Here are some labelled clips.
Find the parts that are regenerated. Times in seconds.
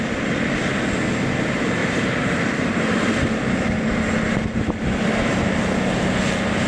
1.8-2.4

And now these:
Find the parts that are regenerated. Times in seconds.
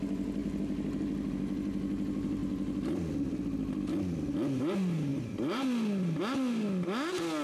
5.1-6.2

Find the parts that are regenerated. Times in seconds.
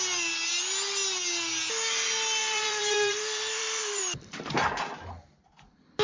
2.4-4.9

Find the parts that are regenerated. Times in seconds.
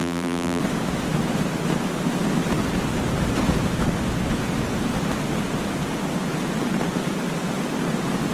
0.0-0.6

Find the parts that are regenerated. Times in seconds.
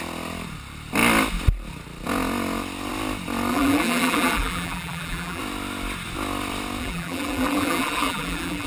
3.5-5.4; 6.8-8.7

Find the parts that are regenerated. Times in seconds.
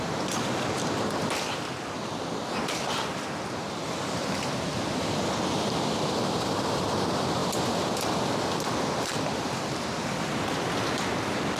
0.0-11.6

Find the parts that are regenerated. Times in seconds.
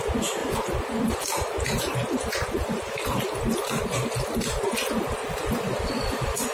none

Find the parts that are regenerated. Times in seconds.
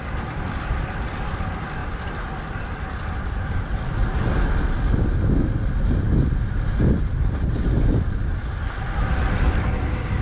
0.0-1.8; 3.6-4.0; 8.6-10.2